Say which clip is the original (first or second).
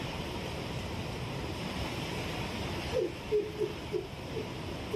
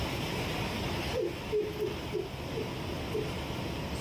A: second